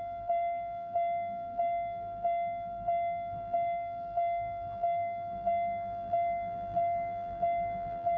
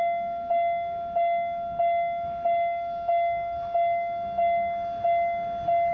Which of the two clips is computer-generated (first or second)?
first